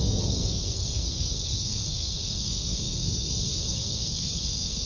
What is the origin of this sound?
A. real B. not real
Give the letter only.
B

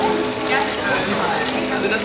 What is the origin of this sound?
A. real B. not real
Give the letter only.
A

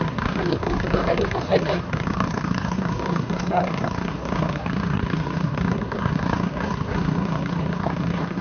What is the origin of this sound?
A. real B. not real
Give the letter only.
B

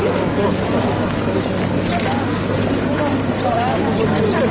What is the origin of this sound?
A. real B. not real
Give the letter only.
A